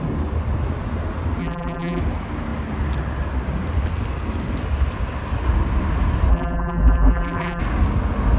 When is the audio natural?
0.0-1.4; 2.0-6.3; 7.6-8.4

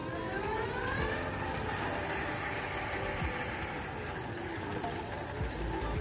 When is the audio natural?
0.0-6.0

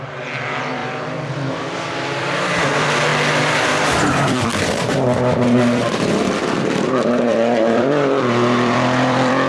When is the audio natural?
3.1-4.3

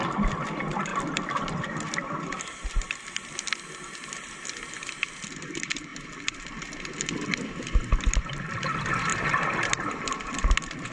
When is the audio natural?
0.0-0.9; 2.9-5.9; 6.7-7.8; 8.6-10.9

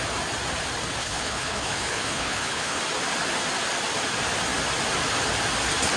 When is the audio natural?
0.0-1.0; 2.8-6.0